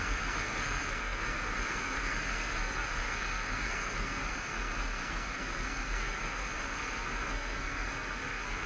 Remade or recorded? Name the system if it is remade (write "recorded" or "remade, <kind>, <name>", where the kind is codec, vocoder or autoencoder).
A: remade, codec, SNAC